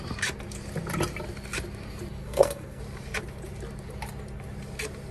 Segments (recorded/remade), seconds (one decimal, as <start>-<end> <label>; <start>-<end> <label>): 0.0-2.2 recorded; 2.2-2.8 remade; 2.8-5.1 recorded